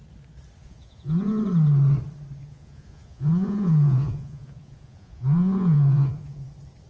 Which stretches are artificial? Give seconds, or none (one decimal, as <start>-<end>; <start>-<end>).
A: 0.6-1.4; 2.4-6.5